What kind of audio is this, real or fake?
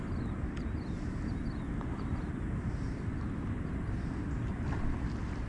real